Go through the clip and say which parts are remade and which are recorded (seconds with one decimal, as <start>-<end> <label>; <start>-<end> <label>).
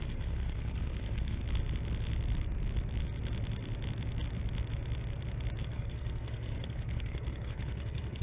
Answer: 0.0-1.4 remade; 1.4-5.6 recorded; 5.6-8.2 remade